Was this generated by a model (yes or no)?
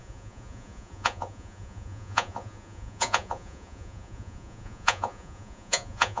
yes